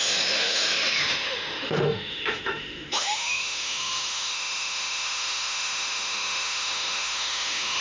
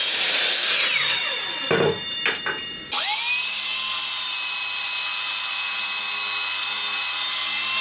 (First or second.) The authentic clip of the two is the second